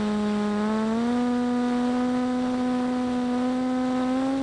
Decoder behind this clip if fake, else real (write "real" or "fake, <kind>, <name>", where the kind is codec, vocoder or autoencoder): real